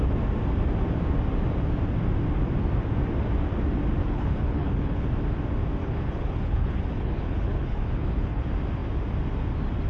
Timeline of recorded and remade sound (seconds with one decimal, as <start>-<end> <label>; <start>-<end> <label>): 0.0-4.0 recorded; 4.0-5.1 remade; 5.1-5.8 recorded; 5.8-8.4 remade; 8.4-9.9 recorded